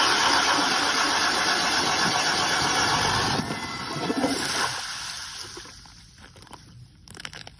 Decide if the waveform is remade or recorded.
recorded